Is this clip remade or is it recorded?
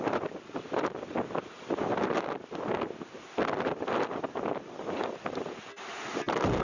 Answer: recorded